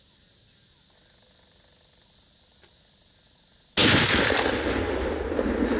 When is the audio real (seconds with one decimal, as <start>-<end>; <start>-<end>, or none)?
0.0-5.8